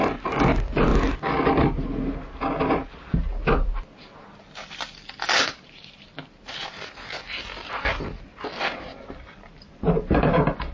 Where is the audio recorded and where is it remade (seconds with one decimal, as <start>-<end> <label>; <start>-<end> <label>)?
0.0-0.9 remade; 0.9-5.4 recorded; 5.4-10.7 remade